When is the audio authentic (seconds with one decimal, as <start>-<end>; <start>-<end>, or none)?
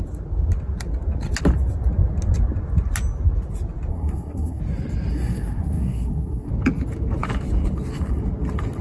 0.0-3.9; 4.6-5.1; 6.5-8.8